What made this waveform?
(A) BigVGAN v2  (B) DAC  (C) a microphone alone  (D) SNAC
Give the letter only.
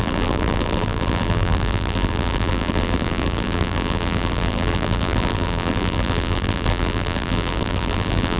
A